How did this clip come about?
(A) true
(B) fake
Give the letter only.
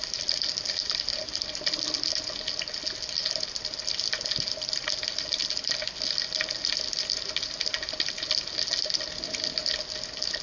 A